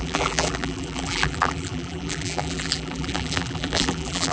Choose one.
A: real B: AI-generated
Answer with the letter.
B